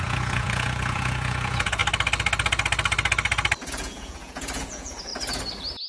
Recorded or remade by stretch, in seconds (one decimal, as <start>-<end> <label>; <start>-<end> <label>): 0.0-1.8 remade; 1.8-3.7 recorded; 3.7-5.1 remade; 5.1-5.9 recorded